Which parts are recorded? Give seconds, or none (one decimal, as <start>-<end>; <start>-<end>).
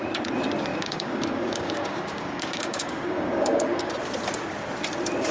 0.0-0.7; 3.9-5.3